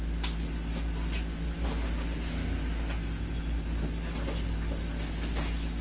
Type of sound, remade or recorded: recorded